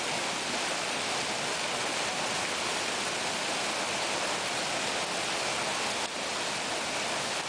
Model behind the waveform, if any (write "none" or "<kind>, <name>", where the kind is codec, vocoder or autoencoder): none